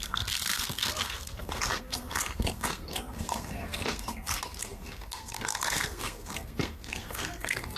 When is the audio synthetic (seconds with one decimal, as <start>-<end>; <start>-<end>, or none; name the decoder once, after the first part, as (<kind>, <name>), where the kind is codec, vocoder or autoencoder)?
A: 0.0-7.8 (codec, SNAC)